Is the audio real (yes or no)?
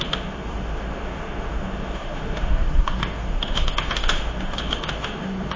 no